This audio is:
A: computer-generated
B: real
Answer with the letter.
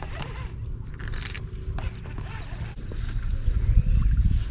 B